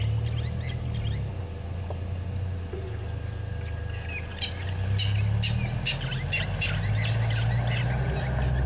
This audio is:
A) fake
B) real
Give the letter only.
B